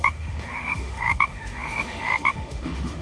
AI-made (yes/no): yes